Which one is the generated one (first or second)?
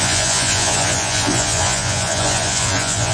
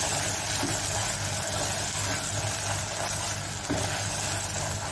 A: first